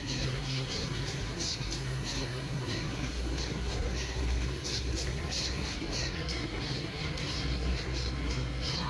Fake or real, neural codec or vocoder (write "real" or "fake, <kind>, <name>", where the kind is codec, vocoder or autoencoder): fake, codec, SNAC